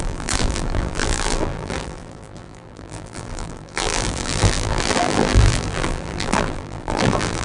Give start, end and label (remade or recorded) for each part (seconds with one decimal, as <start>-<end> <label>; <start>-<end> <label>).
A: 0.0-7.4 remade